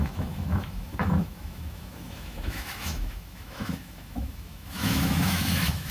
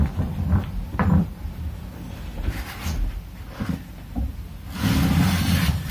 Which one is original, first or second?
second